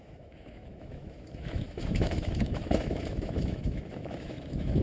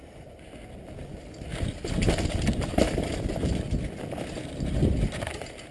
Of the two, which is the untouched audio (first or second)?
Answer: second